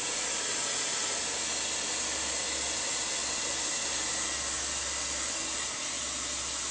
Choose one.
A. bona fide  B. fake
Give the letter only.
A